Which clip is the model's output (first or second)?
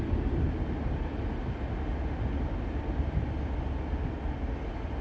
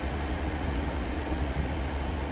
second